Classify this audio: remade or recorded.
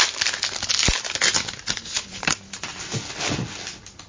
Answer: recorded